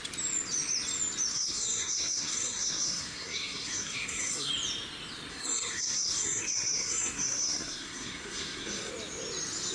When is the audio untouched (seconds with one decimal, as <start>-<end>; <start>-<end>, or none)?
0.0-1.3; 4.5-5.3; 8.9-9.7